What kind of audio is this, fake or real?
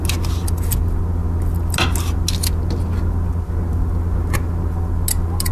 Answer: real